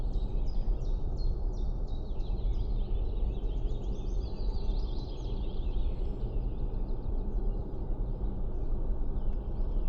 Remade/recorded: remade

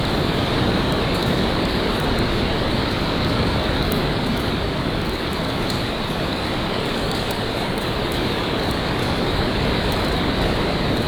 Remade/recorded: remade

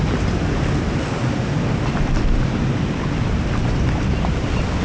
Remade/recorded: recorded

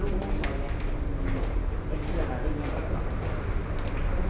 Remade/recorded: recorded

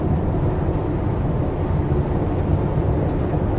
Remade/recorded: recorded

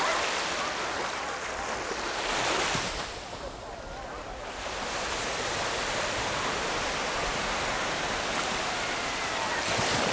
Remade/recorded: recorded